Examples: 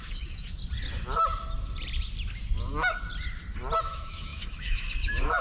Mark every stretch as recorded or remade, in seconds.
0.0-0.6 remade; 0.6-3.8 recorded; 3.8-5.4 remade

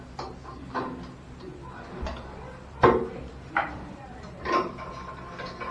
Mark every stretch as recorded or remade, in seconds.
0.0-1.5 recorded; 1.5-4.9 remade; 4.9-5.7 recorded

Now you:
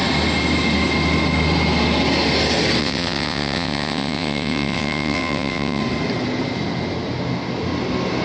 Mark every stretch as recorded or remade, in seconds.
0.0-2.8 recorded; 2.8-5.8 remade; 5.8-8.2 recorded

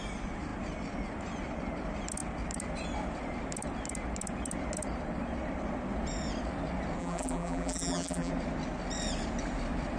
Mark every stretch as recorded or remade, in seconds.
0.0-7.0 recorded; 7.0-8.3 remade; 8.3-10.0 recorded

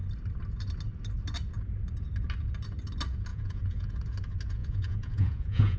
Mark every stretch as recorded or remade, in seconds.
0.0-3.3 recorded; 3.3-3.9 remade; 3.9-4.6 recorded; 4.6-5.8 remade